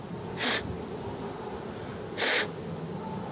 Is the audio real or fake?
real